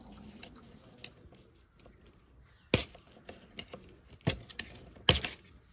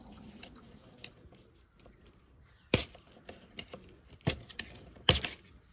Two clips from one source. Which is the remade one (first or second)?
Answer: second